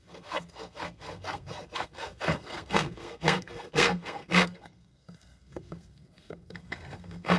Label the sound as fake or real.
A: fake